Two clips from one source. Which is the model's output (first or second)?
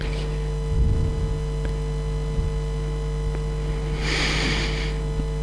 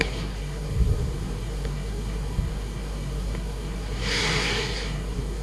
second